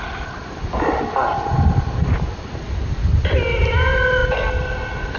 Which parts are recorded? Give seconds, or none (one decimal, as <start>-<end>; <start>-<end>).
0.0-5.2